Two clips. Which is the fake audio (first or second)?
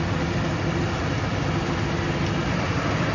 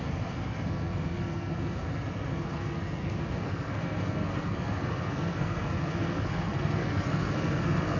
second